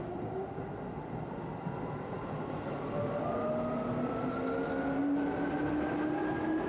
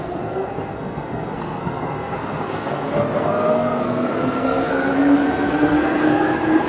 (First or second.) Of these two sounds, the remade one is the second